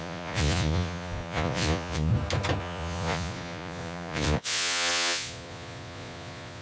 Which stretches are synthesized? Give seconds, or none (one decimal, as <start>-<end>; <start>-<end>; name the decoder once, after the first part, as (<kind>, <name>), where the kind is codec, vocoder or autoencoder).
0.0-2.1 (vocoder, Vocos); 2.6-6.6